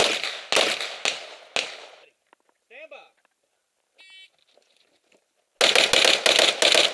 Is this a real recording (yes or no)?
yes